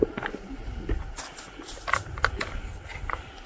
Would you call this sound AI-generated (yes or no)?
yes